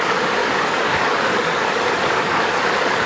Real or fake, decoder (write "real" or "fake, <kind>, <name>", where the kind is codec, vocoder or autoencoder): fake, codec, DAC